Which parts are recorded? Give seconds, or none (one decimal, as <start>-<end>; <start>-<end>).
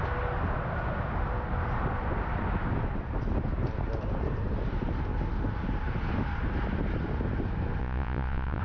0.0-7.8